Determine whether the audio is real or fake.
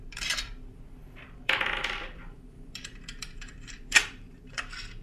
fake